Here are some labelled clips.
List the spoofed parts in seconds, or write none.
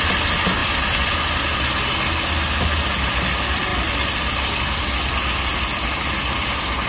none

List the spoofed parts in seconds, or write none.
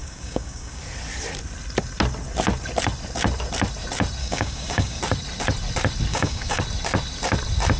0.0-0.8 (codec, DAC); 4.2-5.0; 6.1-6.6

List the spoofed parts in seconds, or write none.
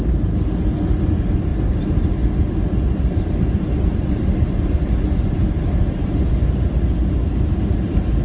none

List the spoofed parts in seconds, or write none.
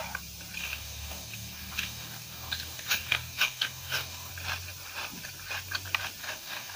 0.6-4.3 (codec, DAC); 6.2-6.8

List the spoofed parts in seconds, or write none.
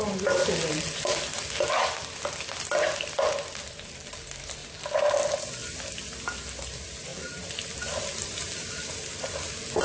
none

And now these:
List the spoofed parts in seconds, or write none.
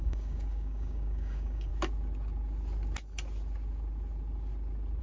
0.0-1.7 (codec, DAC)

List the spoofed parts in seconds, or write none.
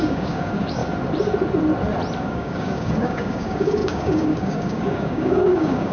0.0-0.8 (codec, DAC); 2.2-5.9